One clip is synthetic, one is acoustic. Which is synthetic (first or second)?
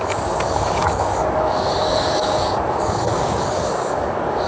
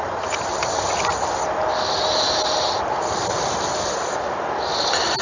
first